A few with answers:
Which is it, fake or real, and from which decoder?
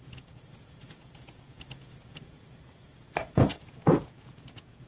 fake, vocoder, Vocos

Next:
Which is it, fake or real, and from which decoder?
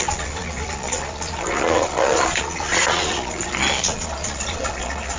fake, vocoder, Vocos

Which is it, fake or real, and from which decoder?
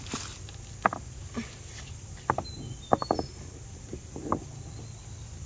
real